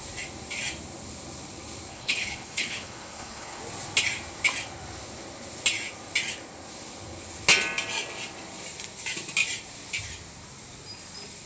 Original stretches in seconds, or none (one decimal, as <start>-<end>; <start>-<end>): 0.0-1.9; 3.6-11.5